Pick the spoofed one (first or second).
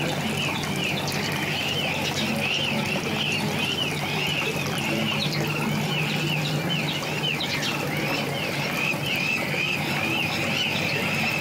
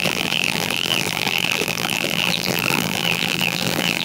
second